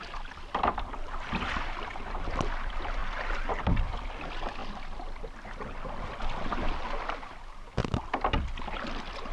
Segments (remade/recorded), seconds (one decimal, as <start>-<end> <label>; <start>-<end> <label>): 0.0-9.3 recorded